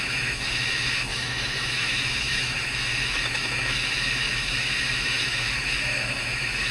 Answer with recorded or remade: remade